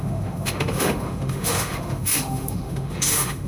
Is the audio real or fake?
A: fake